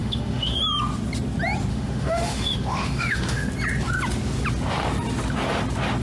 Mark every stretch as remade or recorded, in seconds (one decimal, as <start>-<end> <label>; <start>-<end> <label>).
0.0-0.6 remade; 0.6-1.7 recorded; 1.7-3.5 remade; 3.5-6.0 recorded